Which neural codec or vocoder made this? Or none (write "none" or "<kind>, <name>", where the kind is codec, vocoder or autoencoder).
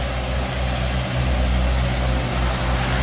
none